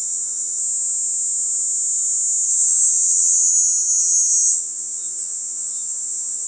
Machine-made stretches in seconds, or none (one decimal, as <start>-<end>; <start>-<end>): 0.0-0.6; 2.5-6.5